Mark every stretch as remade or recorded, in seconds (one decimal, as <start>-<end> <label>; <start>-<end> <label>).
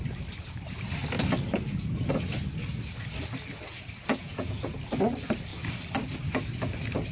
0.0-4.1 recorded; 4.1-4.8 remade; 4.8-7.1 recorded